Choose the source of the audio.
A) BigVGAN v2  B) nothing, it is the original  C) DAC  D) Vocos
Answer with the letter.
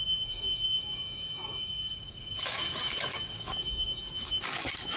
C